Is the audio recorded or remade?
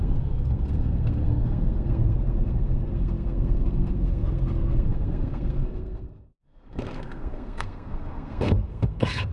remade